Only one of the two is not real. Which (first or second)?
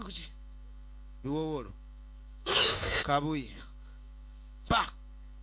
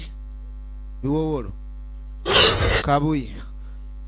first